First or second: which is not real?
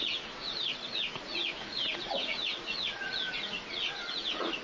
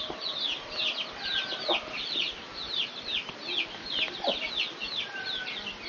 first